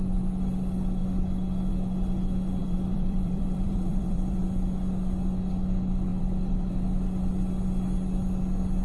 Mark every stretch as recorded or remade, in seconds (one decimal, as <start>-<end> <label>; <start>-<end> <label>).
0.0-2.6 recorded; 2.6-4.4 remade; 4.4-6.1 recorded; 6.1-6.7 remade; 6.7-8.8 recorded